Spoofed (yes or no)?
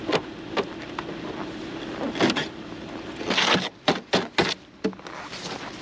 no